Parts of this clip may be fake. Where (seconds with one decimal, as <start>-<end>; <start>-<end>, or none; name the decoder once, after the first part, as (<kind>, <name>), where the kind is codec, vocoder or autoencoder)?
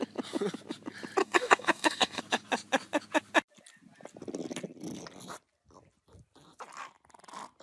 1.2-2.2 (codec, DAC)